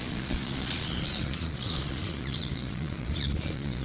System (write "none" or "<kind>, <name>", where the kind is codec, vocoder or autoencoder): vocoder, Vocos